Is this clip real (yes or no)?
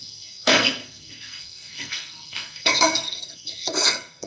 no